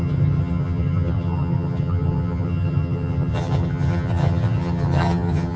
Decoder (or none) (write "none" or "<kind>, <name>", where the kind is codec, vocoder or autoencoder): vocoder, HiFi-GAN